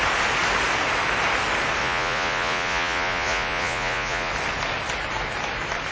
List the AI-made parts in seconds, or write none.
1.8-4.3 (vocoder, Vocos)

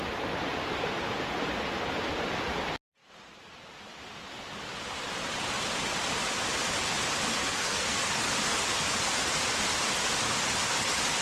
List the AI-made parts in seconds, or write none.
7.4-8.1 (codec, SNAC)

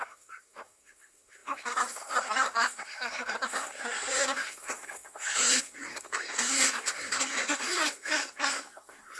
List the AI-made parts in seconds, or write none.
0.0-9.2 (codec, SNAC)

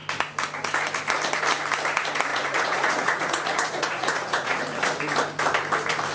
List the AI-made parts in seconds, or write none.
2.3-4.6 (vocoder, Vocos)

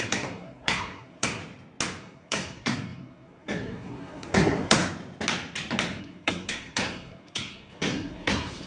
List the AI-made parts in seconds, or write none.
0.0-1.4 (codec, SNAC); 2.0-4.8; 6.0-8.7

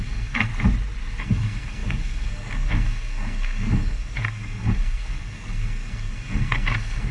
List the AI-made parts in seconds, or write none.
0.0-0.5 (codec, SNAC); 1.2-7.1